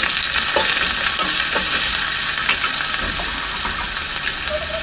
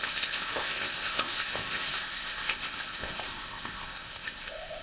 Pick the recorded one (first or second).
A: first